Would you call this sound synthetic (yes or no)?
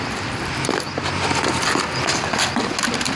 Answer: no